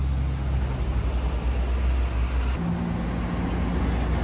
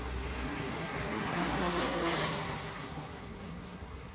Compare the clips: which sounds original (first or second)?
first